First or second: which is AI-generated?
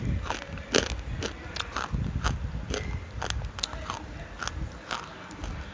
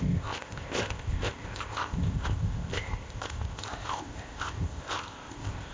second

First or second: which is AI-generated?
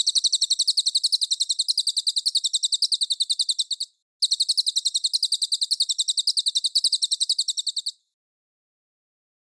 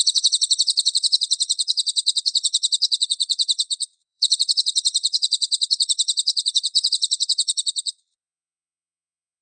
second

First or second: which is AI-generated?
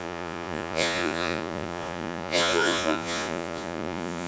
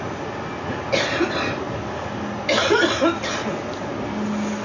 first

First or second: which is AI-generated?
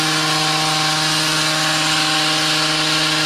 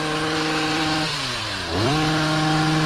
second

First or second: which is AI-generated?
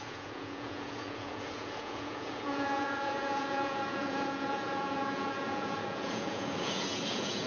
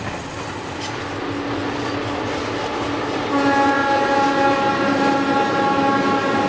first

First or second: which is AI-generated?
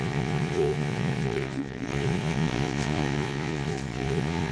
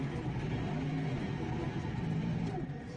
first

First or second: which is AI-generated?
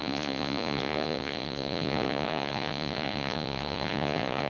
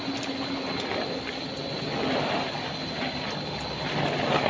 first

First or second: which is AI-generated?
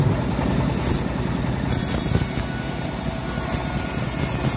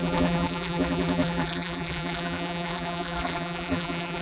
second